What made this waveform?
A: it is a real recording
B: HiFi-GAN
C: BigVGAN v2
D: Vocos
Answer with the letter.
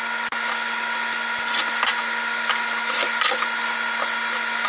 A